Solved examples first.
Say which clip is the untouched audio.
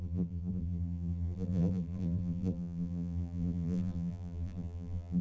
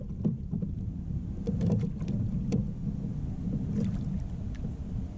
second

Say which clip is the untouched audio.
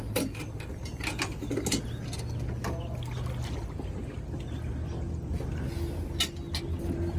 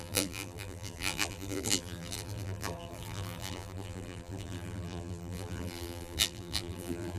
first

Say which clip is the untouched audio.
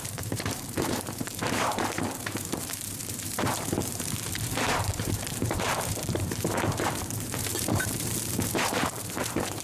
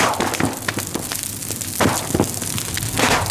second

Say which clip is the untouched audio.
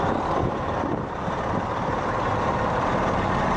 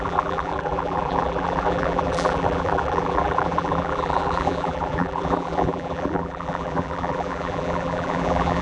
first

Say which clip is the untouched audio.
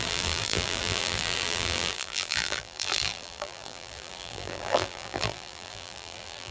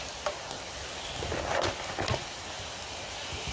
second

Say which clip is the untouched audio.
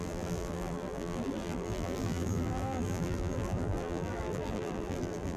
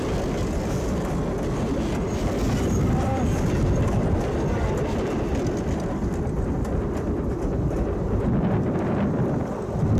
second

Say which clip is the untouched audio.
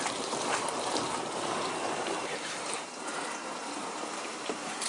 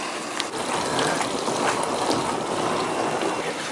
second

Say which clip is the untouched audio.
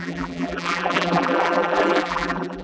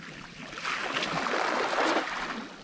second